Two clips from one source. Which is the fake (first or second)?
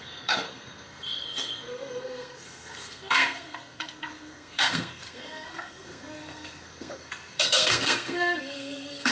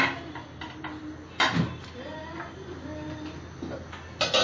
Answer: first